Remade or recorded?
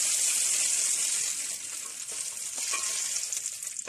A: recorded